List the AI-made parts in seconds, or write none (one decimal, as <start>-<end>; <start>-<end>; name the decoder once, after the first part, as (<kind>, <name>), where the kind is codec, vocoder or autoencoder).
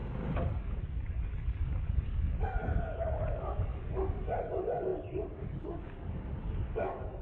0.0-7.2 (codec, DAC)